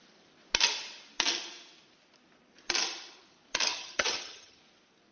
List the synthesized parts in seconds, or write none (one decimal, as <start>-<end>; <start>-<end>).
3.7-4.6